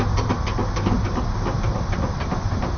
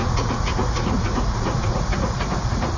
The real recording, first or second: first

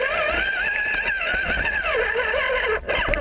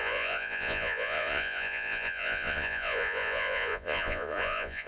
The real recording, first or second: first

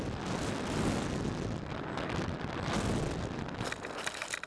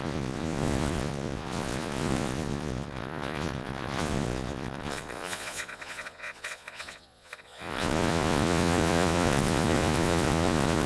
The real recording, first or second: first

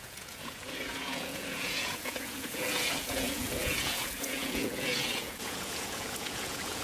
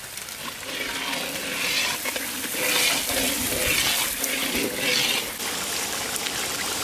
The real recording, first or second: second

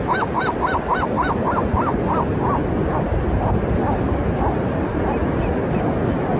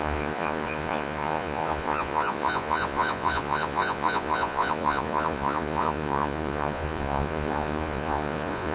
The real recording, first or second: first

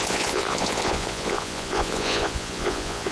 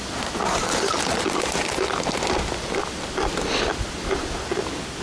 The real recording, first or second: second